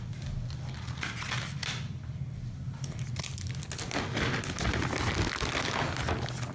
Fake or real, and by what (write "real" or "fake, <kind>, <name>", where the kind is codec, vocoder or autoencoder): real